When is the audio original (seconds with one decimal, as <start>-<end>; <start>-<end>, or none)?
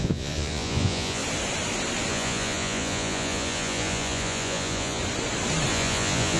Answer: 1.2-2.1; 5.0-5.7